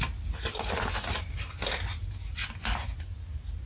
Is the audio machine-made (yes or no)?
no